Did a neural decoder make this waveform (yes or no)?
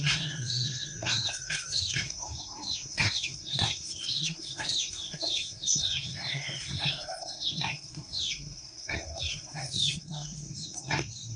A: yes